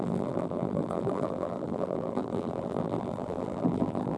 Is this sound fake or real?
fake